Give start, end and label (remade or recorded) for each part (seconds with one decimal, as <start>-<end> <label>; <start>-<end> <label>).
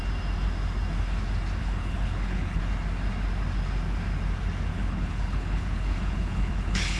0.0-1.6 recorded; 1.6-2.6 remade; 2.6-4.7 recorded; 4.7-7.0 remade